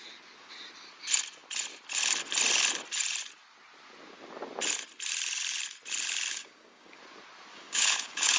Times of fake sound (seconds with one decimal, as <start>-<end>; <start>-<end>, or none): 6.3-7.0; 7.5-8.4

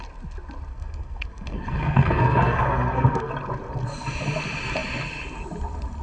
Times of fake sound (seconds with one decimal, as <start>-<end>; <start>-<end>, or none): 0.7-3.3